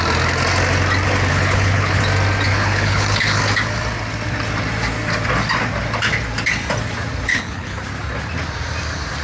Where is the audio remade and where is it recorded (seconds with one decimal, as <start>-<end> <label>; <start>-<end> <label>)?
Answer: 0.0-1.3 recorded; 1.3-2.0 remade; 2.0-2.5 recorded; 2.5-3.4 remade; 3.4-7.3 recorded; 7.3-7.8 remade; 7.8-9.2 recorded